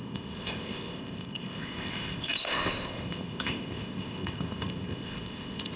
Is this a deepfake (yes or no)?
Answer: yes